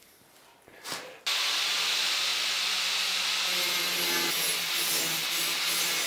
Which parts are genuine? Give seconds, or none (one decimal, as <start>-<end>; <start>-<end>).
0.0-6.1